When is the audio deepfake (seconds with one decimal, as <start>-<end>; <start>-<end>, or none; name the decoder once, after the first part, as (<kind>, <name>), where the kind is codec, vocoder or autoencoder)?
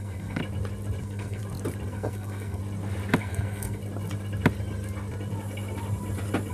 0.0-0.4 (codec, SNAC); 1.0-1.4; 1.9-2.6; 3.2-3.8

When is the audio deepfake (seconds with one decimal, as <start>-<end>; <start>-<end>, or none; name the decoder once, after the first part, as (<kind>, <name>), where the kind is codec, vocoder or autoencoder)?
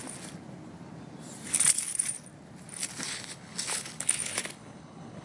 3.1-5.2 (codec, HILCodec)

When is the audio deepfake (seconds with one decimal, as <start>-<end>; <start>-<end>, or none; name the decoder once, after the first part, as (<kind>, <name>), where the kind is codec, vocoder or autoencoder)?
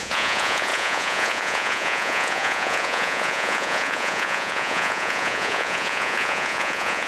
0.0-7.1 (vocoder, Vocos)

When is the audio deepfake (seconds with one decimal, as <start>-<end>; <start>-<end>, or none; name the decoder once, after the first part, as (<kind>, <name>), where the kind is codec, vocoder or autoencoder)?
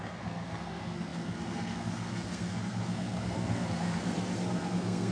0.0-5.1 (codec, SNAC)